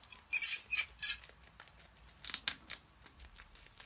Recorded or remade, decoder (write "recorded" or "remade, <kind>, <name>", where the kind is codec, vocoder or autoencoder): recorded